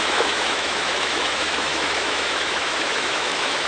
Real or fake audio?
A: fake